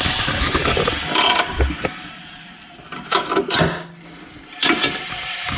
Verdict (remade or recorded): recorded